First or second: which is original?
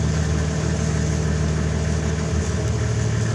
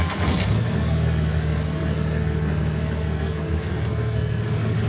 first